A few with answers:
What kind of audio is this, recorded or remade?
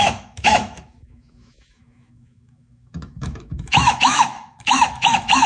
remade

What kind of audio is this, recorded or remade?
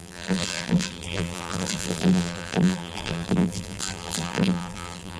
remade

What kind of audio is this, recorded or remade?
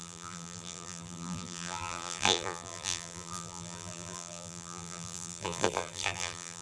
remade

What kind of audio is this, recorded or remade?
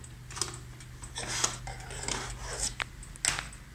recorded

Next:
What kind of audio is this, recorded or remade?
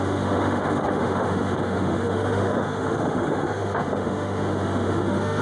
remade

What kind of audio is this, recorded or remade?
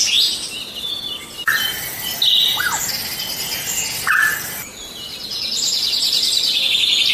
recorded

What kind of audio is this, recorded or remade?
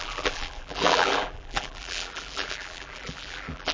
remade